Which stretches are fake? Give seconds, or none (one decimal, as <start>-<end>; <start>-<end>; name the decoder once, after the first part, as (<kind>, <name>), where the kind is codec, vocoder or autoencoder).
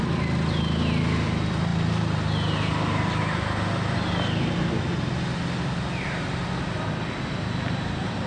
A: none